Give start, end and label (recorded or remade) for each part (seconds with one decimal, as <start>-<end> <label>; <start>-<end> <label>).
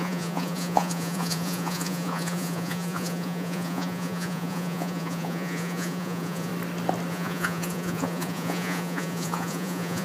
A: 0.0-6.5 remade; 6.5-7.1 recorded; 7.1-10.0 remade